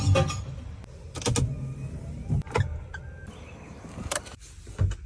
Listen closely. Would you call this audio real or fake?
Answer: real